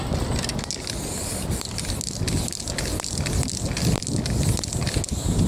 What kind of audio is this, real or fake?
real